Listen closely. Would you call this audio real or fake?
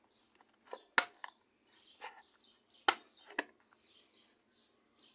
real